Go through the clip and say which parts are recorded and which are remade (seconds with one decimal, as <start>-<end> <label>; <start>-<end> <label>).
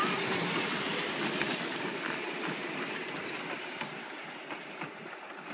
0.0-3.3 remade; 3.3-5.5 recorded